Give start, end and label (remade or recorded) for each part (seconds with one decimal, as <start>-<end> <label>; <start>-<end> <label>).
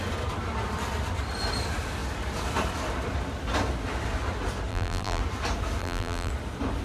0.0-4.7 recorded; 4.7-5.2 remade; 5.2-5.8 recorded; 5.8-6.3 remade; 6.3-6.8 recorded